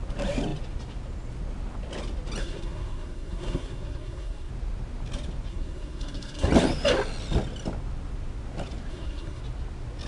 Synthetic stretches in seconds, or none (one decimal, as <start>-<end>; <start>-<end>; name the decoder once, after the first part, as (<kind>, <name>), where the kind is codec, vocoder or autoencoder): 2.4-4.5 (codec, SNAC); 5.5-6.5; 8.9-9.4